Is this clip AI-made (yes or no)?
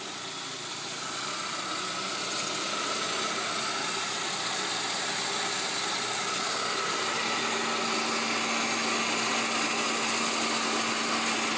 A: no